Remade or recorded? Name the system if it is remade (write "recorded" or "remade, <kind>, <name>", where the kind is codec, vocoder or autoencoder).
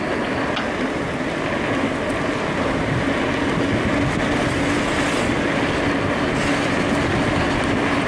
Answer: recorded